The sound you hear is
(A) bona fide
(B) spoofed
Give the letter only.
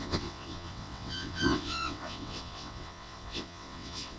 B